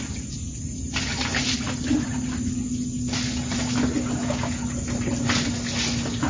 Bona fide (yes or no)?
yes